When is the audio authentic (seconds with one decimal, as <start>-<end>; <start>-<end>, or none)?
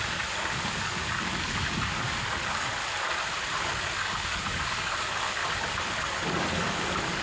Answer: 2.8-3.6; 5.4-6.3